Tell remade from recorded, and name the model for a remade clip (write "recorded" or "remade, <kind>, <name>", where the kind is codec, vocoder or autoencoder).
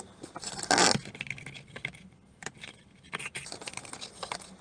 recorded